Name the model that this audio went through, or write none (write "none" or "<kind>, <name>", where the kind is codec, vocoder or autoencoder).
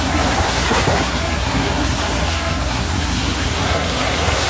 codec, SNAC